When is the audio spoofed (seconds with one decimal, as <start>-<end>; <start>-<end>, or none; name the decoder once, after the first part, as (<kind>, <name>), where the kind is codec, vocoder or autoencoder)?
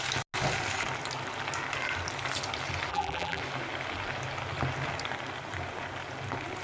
2.9-3.4 (vocoder, BigVGAN v2)